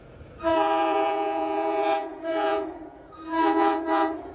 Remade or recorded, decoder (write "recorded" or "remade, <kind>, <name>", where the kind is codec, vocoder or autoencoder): remade, vocoder, Vocos